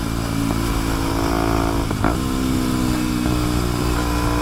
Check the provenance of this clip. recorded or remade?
recorded